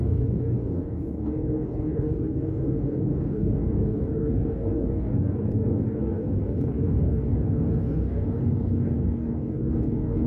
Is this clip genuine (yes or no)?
no